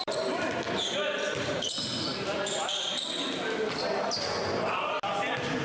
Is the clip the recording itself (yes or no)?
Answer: no